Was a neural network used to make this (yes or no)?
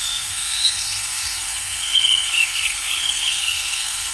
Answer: yes